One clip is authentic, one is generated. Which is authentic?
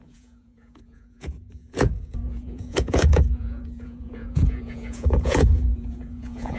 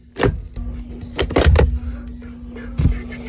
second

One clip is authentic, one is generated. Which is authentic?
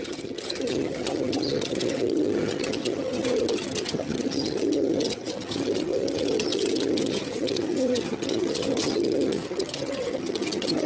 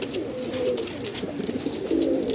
second